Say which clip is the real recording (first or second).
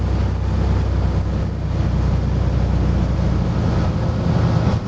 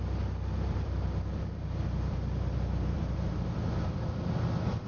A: first